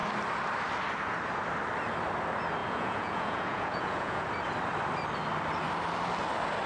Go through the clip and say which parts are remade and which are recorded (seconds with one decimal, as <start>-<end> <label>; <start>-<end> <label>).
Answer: 0.0-2.6 recorded; 2.6-4.3 remade; 4.3-6.7 recorded